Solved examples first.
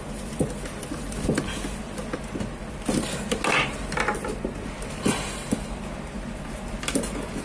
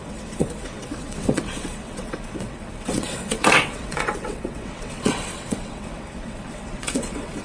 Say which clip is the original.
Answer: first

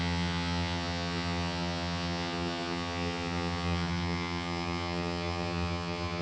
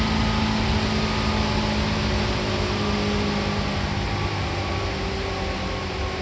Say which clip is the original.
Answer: second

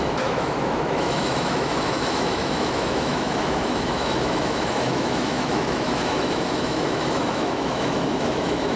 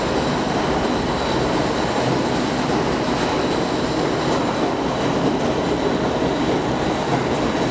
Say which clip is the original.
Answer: second